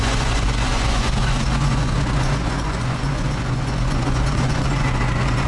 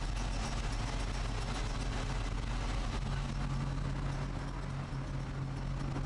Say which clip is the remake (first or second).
first